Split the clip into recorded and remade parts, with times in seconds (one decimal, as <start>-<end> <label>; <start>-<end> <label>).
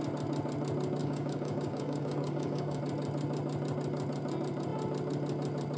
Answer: 0.0-1.0 recorded; 1.0-2.8 remade; 2.8-5.8 recorded